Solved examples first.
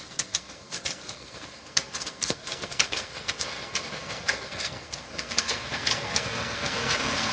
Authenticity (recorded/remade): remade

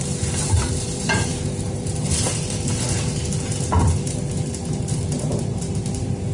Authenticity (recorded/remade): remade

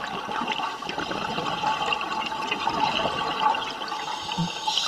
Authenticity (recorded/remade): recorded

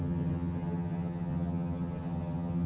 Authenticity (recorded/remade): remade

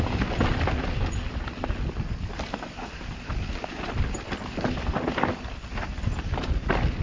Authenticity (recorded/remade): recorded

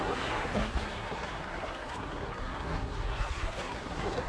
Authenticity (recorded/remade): remade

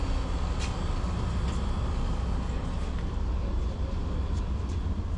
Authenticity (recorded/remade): recorded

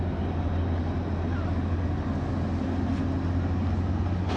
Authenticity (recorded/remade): recorded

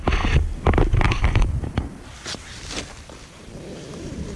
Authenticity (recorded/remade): recorded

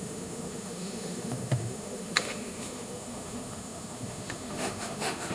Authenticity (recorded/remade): remade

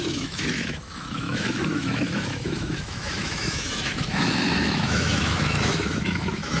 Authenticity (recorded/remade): remade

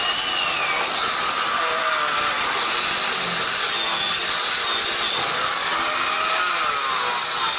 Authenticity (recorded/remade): recorded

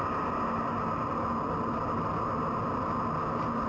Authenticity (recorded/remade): recorded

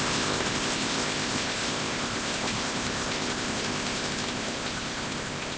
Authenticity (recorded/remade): remade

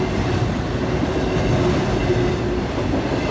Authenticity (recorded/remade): recorded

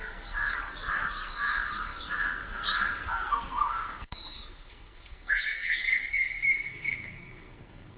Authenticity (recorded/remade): remade